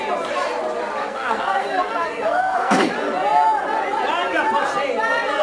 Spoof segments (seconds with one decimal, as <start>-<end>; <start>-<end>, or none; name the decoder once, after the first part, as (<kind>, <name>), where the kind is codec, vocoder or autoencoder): 1.0-2.9 (codec, SNAC)